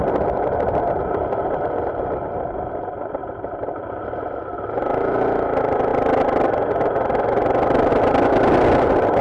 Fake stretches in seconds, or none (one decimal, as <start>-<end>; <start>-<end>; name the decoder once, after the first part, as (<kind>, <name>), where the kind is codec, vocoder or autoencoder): none